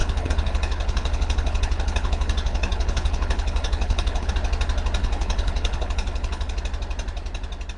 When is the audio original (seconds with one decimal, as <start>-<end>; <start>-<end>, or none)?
4.3-5.0; 6.6-7.8